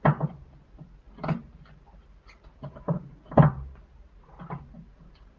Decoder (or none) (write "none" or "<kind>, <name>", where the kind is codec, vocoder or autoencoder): none